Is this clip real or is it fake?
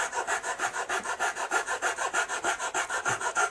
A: real